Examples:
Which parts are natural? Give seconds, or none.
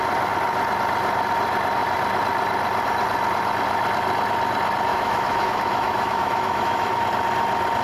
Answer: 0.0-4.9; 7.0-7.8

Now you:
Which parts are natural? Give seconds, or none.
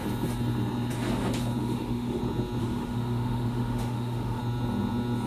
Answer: 0.0-1.6; 2.2-2.6; 4.4-5.3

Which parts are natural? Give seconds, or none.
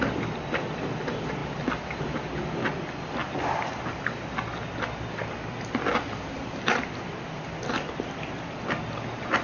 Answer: 3.2-6.6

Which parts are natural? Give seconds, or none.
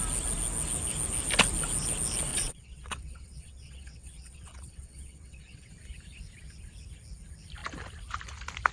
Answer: 0.0-2.3; 5.7-8.7